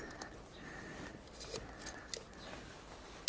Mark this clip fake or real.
real